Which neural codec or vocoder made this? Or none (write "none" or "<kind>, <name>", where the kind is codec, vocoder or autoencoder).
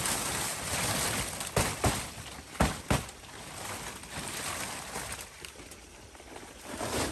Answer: none